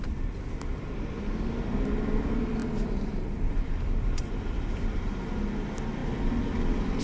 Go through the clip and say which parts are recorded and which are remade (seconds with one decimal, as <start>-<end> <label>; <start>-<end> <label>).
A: 0.0-2.6 recorded; 2.6-5.3 remade; 5.3-7.0 recorded